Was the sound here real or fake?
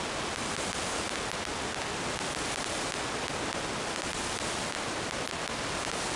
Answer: real